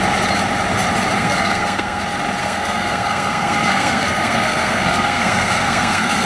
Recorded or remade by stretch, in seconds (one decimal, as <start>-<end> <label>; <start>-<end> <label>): 0.0-1.2 recorded; 1.2-2.0 remade; 2.0-2.4 recorded; 2.4-6.3 remade